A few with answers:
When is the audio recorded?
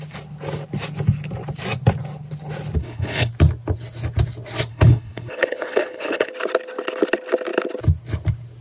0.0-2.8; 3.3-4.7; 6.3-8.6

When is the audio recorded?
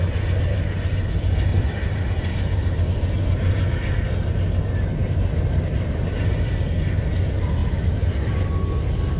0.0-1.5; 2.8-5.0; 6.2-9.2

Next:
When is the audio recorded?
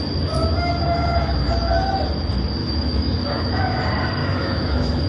0.0-0.4; 1.5-2.6; 3.8-4.2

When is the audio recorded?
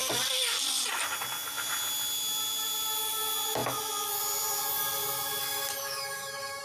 0.0-5.4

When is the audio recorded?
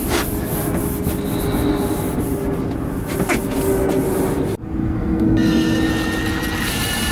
0.0-4.8; 5.9-7.1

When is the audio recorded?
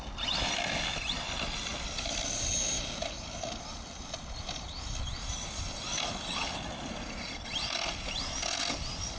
0.0-9.2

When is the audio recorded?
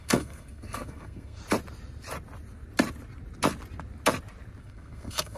1.4-4.6